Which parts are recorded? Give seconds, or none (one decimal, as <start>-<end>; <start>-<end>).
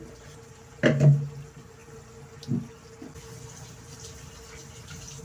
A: 0.0-5.2